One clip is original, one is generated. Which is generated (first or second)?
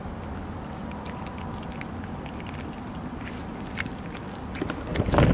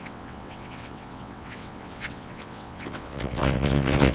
second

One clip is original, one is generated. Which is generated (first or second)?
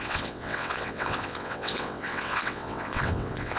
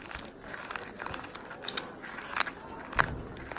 first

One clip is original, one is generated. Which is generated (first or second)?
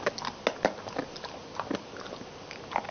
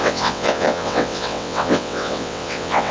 second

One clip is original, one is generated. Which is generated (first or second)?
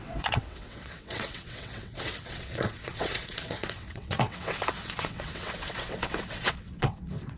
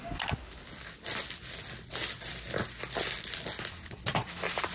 first